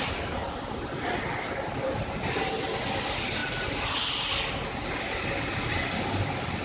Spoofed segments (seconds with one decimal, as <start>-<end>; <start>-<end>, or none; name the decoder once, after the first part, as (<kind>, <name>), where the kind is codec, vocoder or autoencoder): none